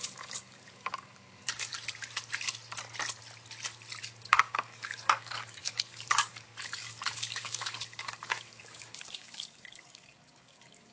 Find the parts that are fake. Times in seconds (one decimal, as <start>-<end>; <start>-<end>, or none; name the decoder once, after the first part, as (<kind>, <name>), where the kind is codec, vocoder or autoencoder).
0.0-1.7 (codec, DAC); 4.0-10.9